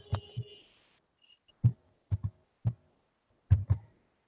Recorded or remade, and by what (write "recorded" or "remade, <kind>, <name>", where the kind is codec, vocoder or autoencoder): recorded